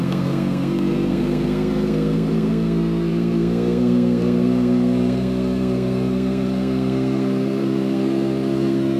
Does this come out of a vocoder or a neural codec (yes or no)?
yes